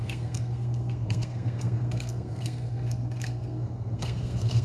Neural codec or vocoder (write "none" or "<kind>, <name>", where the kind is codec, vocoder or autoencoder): codec, SNAC